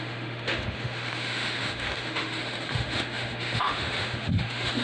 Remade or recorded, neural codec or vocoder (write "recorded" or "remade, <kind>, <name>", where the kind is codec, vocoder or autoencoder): remade, autoencoder, DAC-VAE